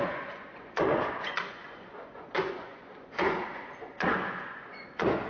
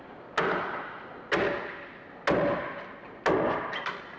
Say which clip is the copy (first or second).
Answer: first